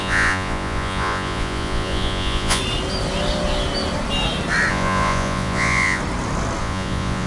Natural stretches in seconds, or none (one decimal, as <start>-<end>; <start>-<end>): 2.6-4.7; 6.0-6.6